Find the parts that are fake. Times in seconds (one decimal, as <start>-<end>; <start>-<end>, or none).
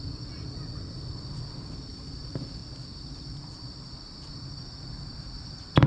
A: none